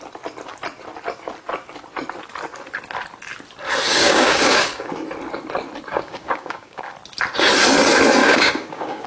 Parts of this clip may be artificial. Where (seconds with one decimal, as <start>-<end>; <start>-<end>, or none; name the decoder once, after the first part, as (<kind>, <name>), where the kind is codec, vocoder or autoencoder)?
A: 3.9-4.9 (codec, DAC); 5.9-6.9; 8.2-9.1